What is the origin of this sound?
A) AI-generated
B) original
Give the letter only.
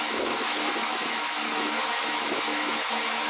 A